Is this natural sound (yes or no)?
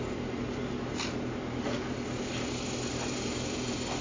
yes